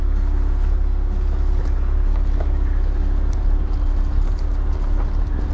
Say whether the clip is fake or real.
real